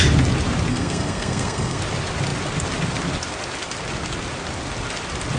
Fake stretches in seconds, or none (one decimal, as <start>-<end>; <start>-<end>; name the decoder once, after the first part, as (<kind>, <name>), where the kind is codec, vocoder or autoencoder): 0.7-1.8 (codec, SNAC)